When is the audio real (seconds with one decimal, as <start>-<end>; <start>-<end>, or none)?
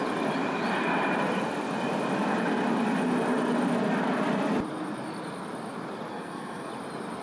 0.0-6.1; 6.7-7.2